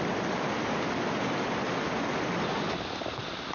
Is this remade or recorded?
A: recorded